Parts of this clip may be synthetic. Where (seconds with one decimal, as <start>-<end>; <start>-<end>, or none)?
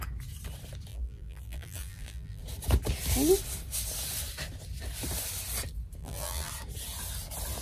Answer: 0.9-2.4; 6.0-6.5